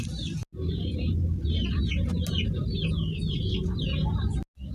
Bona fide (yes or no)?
yes